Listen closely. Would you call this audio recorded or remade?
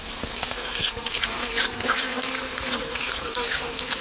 remade